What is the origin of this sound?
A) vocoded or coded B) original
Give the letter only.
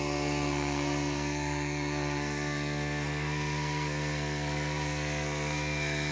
A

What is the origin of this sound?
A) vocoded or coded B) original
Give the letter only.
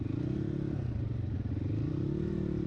B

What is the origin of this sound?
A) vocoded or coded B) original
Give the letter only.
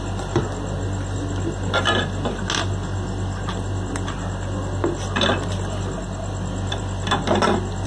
B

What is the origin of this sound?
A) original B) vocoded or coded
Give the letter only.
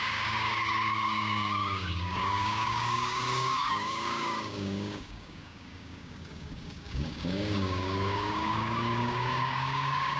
B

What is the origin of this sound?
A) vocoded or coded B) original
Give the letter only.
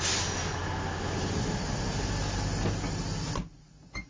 B